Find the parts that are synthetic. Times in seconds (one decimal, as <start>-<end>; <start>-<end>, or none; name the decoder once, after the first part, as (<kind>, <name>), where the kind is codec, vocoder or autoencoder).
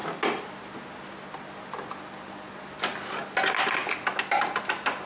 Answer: none